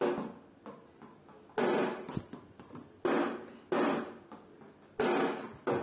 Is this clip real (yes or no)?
yes